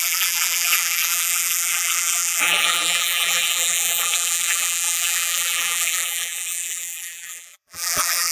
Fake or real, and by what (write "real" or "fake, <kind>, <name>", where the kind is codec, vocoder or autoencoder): fake, vocoder, BigVGAN v2